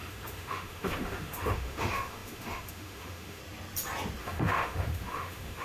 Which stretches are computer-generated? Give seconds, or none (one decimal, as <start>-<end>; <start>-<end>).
0.0-3.4; 4.2-5.6